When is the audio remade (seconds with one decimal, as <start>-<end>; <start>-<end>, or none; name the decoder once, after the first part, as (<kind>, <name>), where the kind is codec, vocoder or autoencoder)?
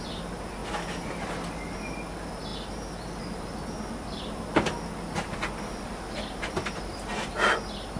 none